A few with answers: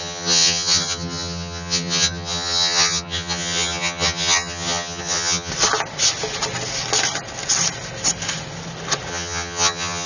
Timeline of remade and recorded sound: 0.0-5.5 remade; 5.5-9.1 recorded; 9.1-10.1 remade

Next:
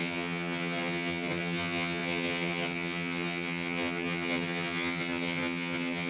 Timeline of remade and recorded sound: 0.0-6.1 remade